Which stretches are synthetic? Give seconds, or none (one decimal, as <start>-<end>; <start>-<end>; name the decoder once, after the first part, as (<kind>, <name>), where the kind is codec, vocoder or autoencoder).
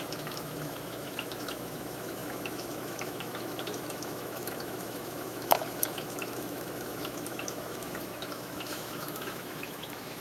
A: 0.0-10.2 (autoencoder, DAC-VAE)